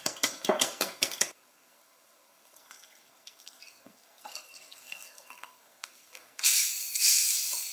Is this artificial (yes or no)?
yes